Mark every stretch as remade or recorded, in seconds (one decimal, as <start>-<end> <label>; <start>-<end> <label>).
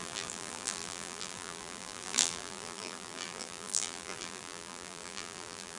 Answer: 0.0-5.8 remade